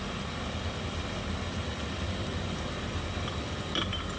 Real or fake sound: real